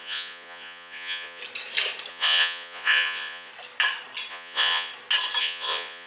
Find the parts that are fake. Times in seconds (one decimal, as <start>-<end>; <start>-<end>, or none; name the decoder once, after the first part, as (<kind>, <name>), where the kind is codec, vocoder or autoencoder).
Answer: 0.0-1.4 (vocoder, Vocos); 2.1-3.5; 4.3-4.9; 5.4-6.1